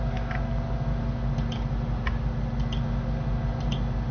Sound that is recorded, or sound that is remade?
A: recorded